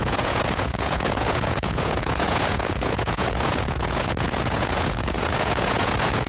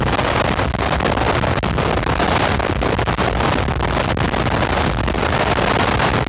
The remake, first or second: first